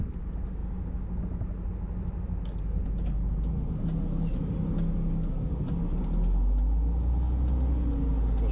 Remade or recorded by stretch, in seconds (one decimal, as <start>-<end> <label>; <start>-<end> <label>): 0.0-8.5 recorded